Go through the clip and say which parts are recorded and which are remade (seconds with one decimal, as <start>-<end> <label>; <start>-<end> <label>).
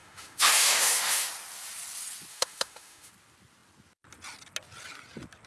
0.0-1.3 remade; 1.3-2.3 recorded; 2.3-3.1 remade; 3.1-5.5 recorded